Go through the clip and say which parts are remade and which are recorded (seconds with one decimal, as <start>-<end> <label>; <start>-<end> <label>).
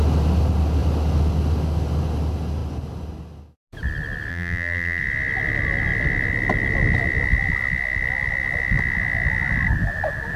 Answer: 0.0-4.3 recorded; 4.3-5.0 remade; 5.0-10.4 recorded